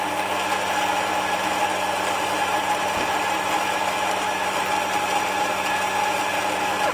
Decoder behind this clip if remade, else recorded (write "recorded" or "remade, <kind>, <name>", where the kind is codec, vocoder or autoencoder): recorded